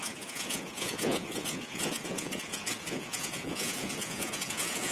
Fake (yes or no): yes